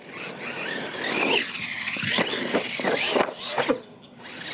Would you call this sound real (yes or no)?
yes